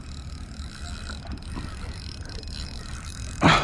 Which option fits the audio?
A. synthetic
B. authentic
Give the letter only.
B